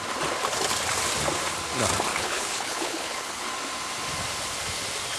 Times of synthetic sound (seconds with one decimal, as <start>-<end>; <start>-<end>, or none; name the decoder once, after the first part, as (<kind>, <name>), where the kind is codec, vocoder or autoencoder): 2.1-3.5 (codec, HILCodec)